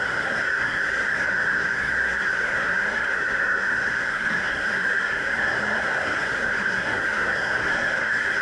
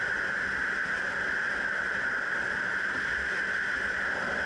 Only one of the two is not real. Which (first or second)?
first